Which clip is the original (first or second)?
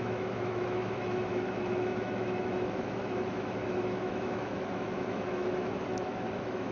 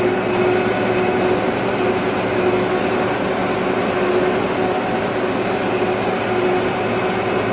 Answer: second